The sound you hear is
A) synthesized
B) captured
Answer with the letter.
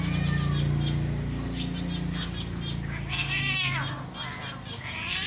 B